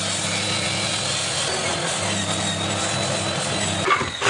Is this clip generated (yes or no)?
no